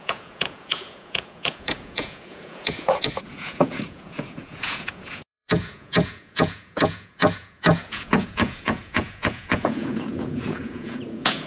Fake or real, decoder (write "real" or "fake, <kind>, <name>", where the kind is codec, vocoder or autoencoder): fake, vocoder, Vocos